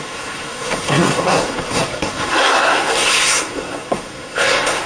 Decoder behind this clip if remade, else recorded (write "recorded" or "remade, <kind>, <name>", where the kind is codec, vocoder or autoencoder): remade, codec, SNAC